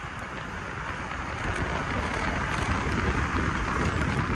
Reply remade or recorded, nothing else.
recorded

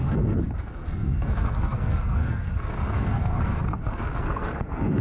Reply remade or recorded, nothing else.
remade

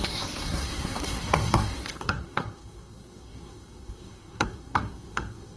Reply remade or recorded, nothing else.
remade